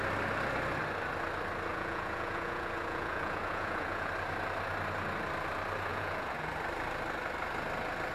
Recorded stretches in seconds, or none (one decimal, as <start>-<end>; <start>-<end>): 0.0-1.7; 4.1-5.9; 6.5-8.1